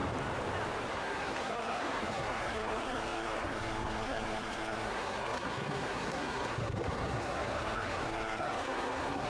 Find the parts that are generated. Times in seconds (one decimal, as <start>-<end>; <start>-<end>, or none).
0.9-9.3

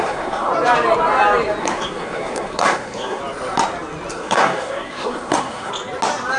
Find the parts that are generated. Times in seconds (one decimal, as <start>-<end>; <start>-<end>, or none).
0.0-0.5; 1.6-3.2; 4.1-5.7